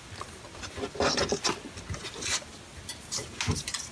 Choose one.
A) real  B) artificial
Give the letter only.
A